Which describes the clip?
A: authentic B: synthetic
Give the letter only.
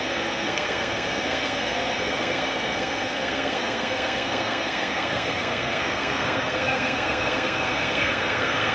B